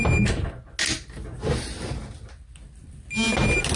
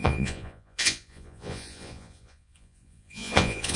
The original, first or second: first